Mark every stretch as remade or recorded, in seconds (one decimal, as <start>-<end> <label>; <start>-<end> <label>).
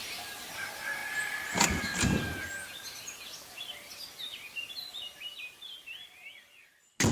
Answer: 0.0-7.1 recorded